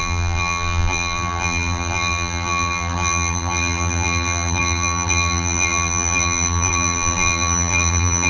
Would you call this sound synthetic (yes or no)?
yes